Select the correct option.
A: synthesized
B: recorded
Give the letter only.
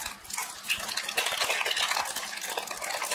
B